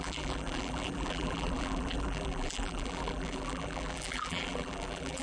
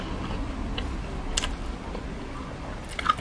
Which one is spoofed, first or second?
first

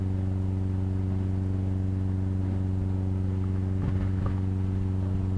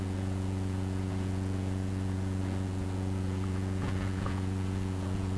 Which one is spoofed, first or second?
second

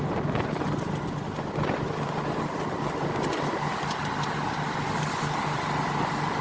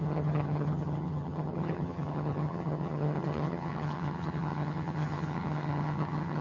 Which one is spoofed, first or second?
second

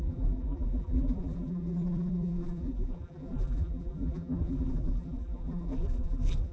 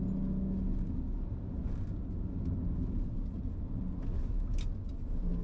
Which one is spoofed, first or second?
first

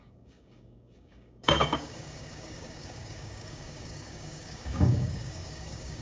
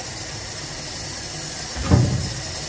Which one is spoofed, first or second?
first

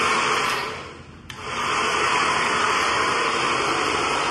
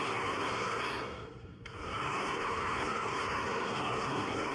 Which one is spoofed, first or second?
second